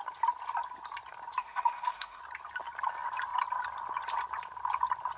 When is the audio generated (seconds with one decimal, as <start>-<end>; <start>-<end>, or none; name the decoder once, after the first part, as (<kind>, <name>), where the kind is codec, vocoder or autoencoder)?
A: 1.4-2.2 (autoencoder, DAC-VAE)